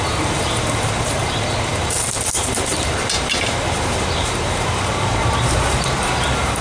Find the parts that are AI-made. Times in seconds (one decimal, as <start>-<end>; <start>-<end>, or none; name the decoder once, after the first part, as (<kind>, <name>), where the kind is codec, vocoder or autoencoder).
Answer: 0.0-6.6 (vocoder, BigVGAN v2)